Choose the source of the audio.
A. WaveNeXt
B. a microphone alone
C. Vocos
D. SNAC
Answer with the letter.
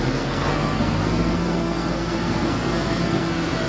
D